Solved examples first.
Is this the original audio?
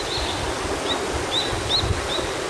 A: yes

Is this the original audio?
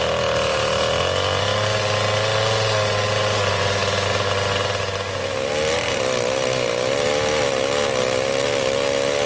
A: yes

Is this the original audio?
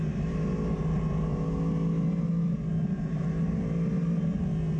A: yes